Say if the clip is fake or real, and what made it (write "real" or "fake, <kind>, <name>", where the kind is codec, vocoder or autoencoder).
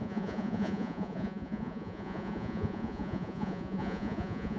fake, vocoder, Vocos